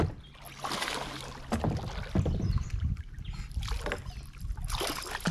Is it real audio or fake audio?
real